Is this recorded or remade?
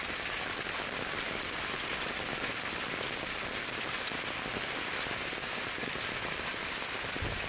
recorded